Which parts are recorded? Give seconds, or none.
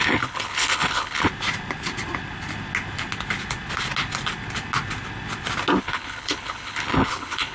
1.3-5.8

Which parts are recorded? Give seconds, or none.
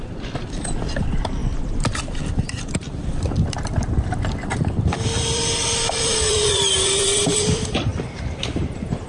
none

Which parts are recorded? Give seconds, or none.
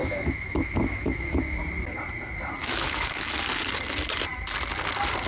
1.6-2.6; 3.3-5.3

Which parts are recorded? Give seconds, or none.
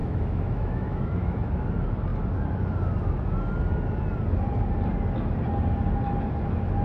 1.5-6.8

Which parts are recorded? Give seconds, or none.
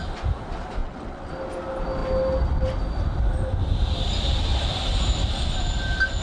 0.0-0.8; 1.3-6.2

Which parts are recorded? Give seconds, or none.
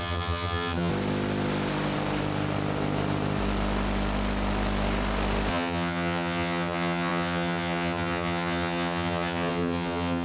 0.9-5.5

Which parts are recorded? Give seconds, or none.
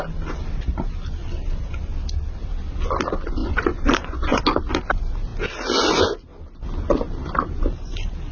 0.0-3.4; 4.4-8.3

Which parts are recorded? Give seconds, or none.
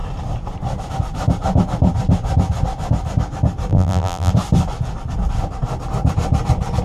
0.0-3.7; 4.3-6.8